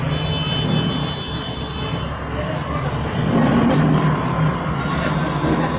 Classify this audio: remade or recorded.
recorded